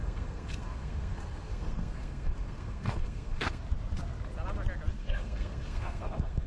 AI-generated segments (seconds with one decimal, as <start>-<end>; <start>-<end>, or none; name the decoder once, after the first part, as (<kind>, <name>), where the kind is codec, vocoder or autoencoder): 0.0-3.6 (codec, SNAC); 5.0-6.5